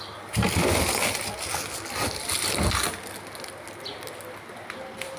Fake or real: real